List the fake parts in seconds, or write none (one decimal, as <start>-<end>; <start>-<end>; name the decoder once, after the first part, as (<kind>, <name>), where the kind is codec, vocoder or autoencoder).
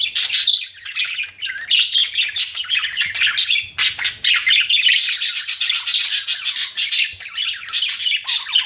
none